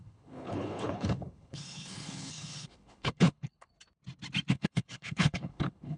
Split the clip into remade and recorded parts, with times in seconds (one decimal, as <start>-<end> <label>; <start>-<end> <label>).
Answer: 0.0-3.7 remade; 3.7-4.5 recorded; 4.5-6.0 remade